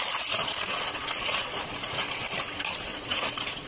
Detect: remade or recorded remade